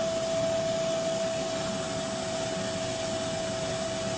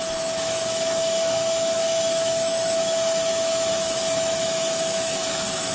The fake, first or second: second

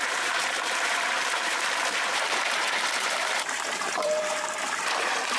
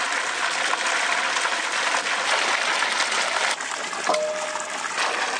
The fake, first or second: first